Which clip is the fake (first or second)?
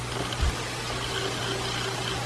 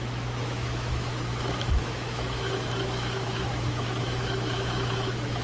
second